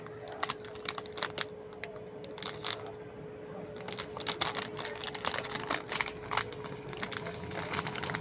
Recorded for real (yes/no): yes